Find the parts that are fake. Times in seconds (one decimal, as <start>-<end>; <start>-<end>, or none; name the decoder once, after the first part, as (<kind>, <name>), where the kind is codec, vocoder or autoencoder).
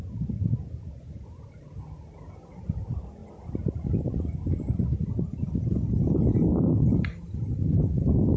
none